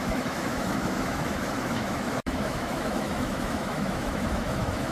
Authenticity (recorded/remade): remade